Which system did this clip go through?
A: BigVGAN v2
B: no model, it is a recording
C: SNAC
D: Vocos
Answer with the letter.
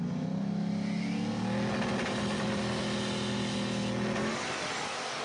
B